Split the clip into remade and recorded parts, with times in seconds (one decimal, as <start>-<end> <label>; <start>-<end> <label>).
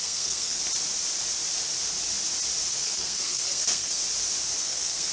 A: 0.0-0.6 remade; 0.6-2.7 recorded; 2.7-4.0 remade; 4.0-4.6 recorded; 4.6-5.1 remade